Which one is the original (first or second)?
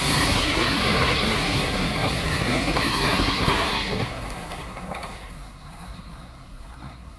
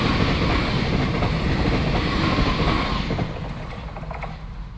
second